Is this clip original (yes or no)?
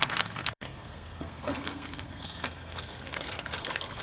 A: no